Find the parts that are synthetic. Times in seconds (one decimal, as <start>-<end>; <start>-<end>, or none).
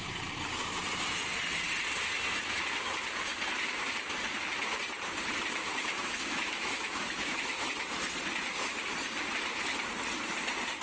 5.7-7.7